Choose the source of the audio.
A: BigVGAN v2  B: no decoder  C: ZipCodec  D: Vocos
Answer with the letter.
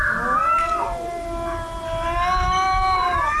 B